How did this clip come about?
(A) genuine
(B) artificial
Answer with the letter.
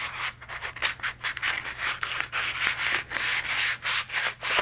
A